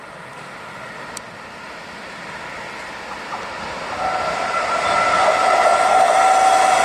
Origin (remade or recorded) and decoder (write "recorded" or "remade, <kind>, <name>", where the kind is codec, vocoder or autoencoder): recorded